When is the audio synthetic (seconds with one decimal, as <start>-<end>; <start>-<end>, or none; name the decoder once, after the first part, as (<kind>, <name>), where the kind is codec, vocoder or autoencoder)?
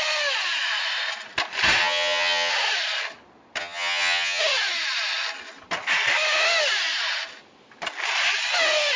1.8-2.5 (vocoder, HiFi-GAN); 3.6-4.4